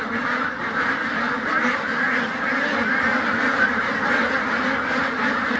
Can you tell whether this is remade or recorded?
recorded